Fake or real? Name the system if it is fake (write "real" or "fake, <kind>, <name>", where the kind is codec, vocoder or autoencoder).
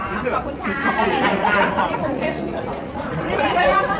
fake, vocoder, Vocos